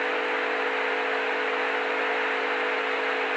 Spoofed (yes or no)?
no